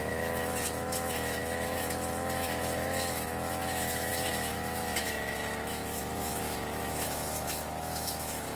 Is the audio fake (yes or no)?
yes